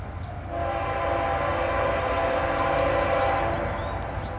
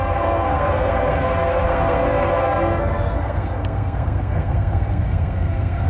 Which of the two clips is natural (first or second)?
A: first